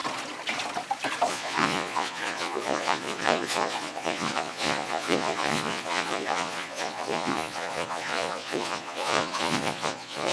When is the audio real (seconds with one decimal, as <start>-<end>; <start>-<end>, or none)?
0.0-1.3

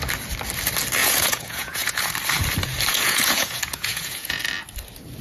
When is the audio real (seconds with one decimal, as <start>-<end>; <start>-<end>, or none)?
0.0-1.0; 2.1-2.9; 4.4-5.2

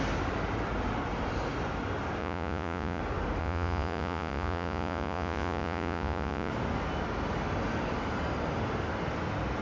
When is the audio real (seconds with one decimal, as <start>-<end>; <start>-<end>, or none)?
0.0-2.2; 3.0-3.4; 6.5-9.6

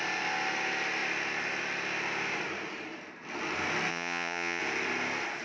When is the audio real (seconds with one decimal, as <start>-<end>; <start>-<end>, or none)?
0.0-3.9; 4.6-5.4

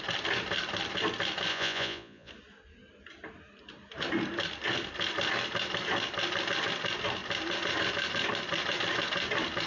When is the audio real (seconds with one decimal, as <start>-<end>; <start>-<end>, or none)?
0.0-1.5; 2.3-9.7

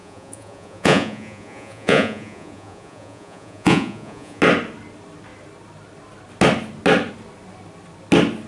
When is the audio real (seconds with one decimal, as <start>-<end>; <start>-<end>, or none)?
4.4-8.5

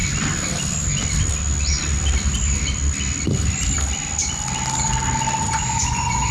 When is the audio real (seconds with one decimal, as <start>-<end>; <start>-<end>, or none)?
0.0-5.4